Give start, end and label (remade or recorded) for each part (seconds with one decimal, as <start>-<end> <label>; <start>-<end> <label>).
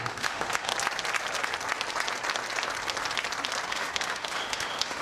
0.0-0.7 remade; 0.7-3.7 recorded; 3.7-5.0 remade